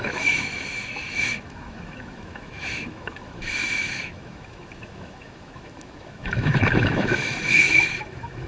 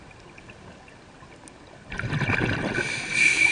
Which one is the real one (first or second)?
second